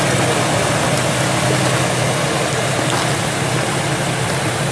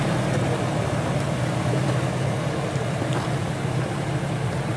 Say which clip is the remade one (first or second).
second